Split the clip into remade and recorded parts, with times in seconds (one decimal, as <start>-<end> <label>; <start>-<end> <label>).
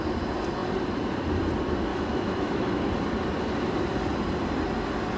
0.0-1.9 recorded; 1.9-2.8 remade; 2.8-5.2 recorded